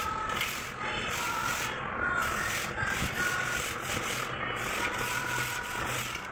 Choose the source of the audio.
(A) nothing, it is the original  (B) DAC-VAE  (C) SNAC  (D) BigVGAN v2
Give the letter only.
D